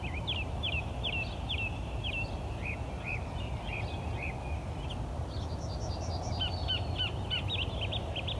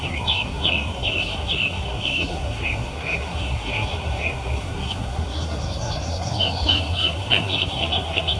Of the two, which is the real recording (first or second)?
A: first